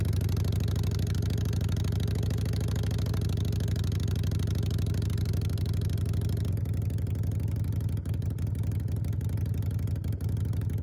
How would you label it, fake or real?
real